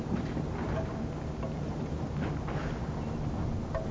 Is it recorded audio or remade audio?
recorded